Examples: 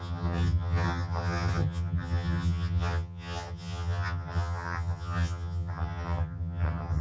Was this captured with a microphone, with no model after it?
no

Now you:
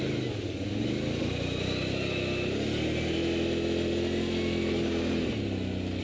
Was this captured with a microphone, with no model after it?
yes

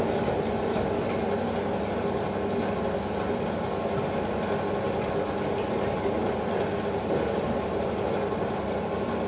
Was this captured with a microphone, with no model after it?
yes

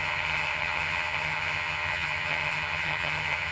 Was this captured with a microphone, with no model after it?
no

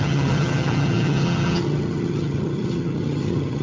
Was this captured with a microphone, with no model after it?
no